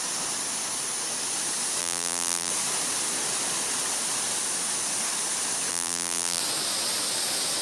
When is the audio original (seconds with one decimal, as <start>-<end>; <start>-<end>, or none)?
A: 0.0-1.8; 2.5-5.7; 6.4-7.6